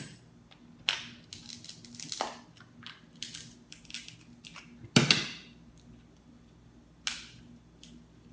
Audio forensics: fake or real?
real